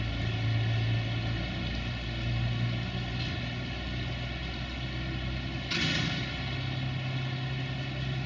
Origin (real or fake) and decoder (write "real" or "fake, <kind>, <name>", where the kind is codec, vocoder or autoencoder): real